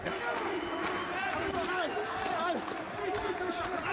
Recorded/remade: recorded